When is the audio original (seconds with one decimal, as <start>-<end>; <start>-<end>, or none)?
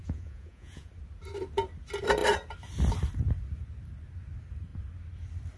0.9-5.6